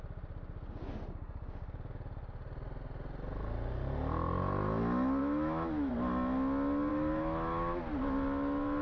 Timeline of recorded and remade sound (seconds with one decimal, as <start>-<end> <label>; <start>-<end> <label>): 0.0-5.2 recorded; 5.2-5.9 remade; 5.9-6.9 recorded; 6.9-7.8 remade; 7.8-8.8 recorded